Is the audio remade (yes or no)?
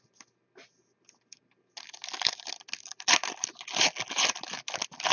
no